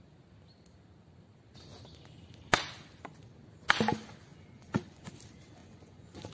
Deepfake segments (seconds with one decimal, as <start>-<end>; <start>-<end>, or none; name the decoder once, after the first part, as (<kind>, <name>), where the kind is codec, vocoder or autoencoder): 4.3-5.1 (vocoder, Vocos); 5.6-6.3